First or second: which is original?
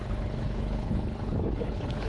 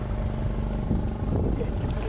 second